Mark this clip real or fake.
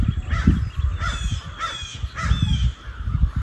real